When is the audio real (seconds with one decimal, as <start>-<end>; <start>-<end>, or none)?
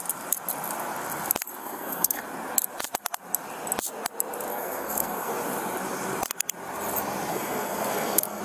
0.0-1.6; 2.2-4.5; 5.3-7.3